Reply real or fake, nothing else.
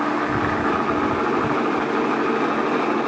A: real